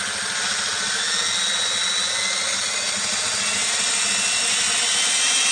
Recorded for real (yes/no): yes